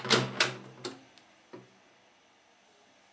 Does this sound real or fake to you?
real